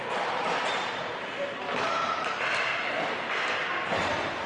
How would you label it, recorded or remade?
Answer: remade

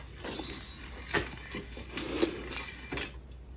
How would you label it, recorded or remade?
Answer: recorded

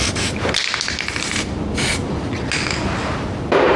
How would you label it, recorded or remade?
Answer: recorded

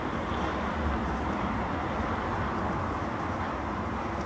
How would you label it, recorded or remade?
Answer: recorded